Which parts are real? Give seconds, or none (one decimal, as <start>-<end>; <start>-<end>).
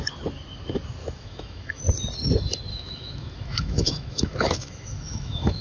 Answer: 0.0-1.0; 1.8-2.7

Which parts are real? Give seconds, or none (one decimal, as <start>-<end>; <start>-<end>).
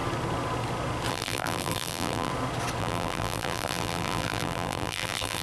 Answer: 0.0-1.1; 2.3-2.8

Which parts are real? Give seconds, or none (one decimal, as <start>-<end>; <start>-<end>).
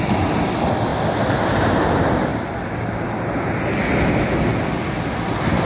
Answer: 0.0-5.7